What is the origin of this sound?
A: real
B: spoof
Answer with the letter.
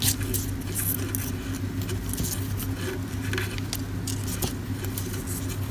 A